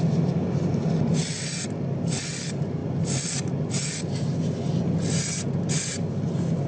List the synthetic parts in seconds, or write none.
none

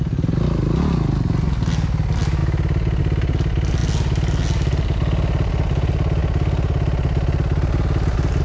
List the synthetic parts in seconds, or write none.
none

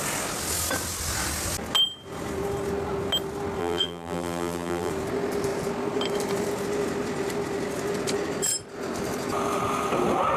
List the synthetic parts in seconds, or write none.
3.6-4.9 (vocoder, BigVGAN v2)

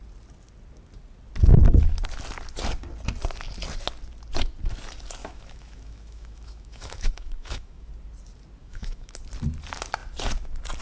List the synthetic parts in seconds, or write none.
5.2-7.9 (autoencoder, DAC-VAE); 8.6-9.2

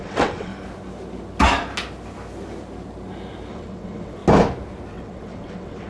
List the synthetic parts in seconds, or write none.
0.0-0.5 (vocoder, WaveNeXt); 3.5-4.2; 4.9-5.9

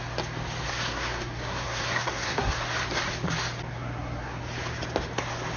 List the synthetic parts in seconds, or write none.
0.6-2.6 (codec, SNAC); 3.7-4.4

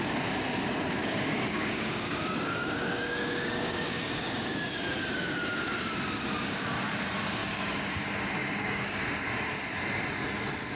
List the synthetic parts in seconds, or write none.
1.0-4.7 (codec, DAC); 7.4-7.9; 8.4-9.0

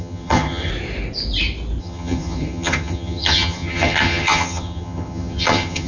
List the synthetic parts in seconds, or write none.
0.0-0.7 (vocoder, HiFi-GAN); 1.8-5.9